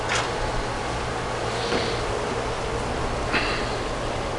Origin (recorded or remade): recorded